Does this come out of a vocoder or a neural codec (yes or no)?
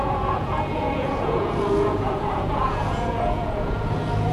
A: yes